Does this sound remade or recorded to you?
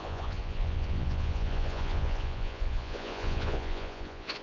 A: remade